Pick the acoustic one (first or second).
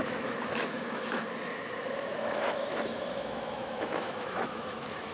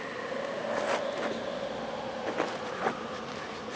second